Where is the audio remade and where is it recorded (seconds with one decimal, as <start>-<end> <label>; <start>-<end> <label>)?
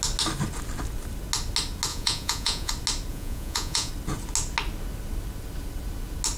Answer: 0.0-1.9 recorded; 1.9-2.7 remade; 2.7-3.1 recorded; 3.1-3.9 remade; 3.9-6.4 recorded